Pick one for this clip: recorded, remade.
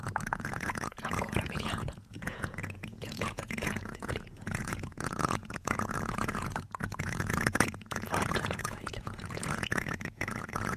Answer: remade